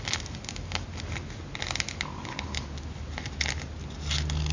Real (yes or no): yes